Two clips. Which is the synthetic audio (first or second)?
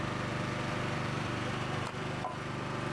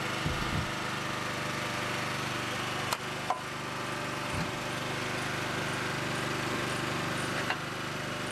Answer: first